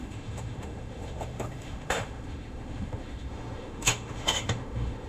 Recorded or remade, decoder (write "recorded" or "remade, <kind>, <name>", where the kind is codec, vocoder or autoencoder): remade, autoencoder, DAC-VAE